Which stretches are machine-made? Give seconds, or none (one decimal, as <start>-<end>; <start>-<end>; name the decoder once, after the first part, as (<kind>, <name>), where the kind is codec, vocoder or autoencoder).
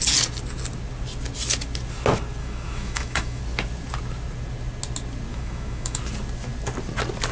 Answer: 2.4-3.4 (autoencoder, DAC-VAE); 5.3-6.0